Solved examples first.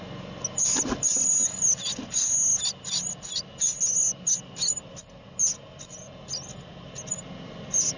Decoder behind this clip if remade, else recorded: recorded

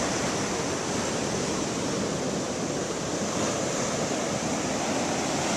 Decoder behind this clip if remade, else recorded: recorded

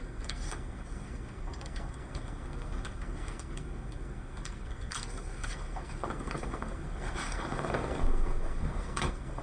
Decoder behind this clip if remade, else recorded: remade, codec, SNAC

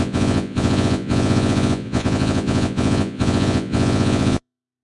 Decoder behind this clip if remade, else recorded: remade, vocoder, Vocos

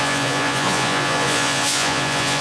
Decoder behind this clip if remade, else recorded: remade, vocoder, Vocos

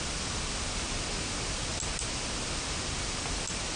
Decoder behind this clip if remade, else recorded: recorded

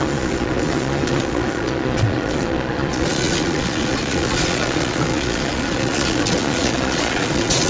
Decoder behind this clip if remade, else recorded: remade, vocoder, Vocos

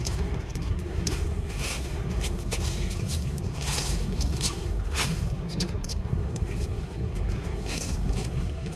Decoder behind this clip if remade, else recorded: remade, codec, SNAC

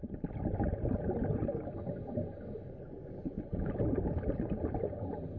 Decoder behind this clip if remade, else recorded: recorded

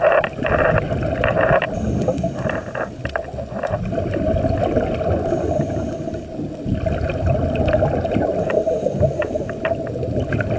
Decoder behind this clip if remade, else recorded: remade, vocoder, BigVGAN v2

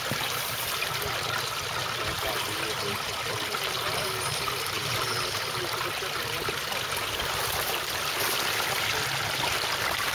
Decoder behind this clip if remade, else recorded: recorded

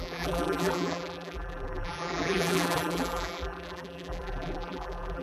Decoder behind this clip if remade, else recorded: remade, vocoder, BigVGAN v2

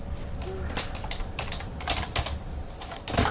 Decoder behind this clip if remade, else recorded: recorded